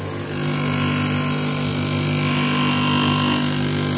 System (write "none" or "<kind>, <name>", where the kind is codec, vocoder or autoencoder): none